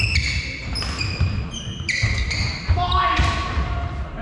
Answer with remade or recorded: recorded